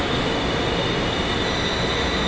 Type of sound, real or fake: real